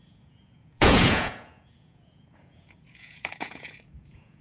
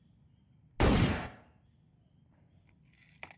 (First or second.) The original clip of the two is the second